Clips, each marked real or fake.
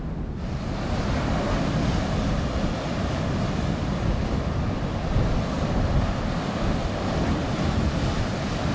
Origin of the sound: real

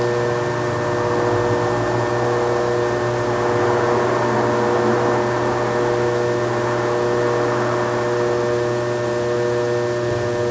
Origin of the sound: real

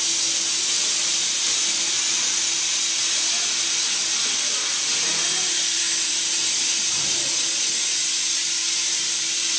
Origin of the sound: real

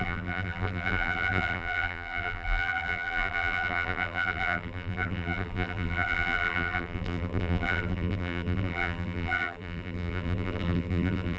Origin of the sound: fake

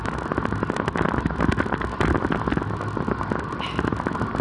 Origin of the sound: real